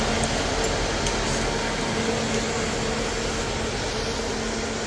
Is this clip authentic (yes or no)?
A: yes